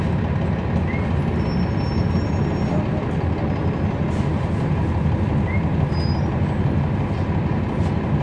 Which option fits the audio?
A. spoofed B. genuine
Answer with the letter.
B